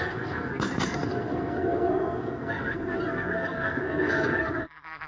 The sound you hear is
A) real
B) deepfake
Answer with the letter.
B